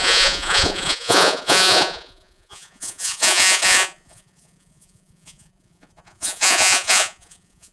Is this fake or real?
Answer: fake